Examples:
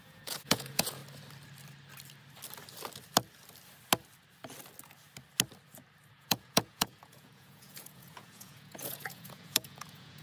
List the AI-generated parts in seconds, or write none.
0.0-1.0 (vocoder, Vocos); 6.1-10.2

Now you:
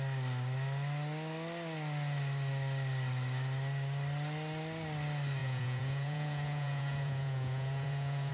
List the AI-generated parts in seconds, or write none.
5.4-8.3 (vocoder, Vocos)

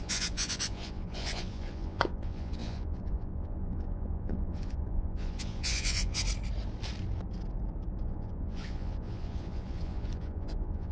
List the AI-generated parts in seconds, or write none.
0.0-6.2 (vocoder, Vocos); 8.0-10.9

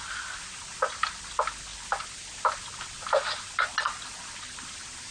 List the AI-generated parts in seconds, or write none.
none

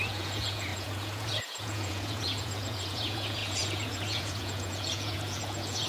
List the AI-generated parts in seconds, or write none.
0.0-5.9 (vocoder, Vocos)

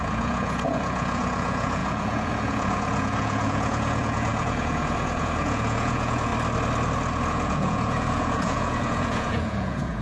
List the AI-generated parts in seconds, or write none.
0.0-6.3 (vocoder, Vocos); 7.3-10.0

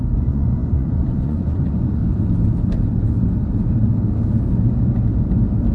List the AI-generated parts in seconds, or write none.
0.0-2.0 (vocoder, Vocos)